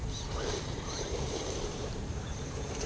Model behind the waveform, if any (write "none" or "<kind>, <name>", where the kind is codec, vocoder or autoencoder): vocoder, BigVGAN v2